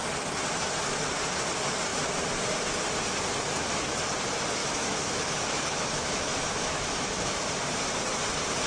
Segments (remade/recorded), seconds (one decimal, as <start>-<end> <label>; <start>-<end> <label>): 0.0-4.6 recorded; 4.6-7.5 remade; 7.5-8.7 recorded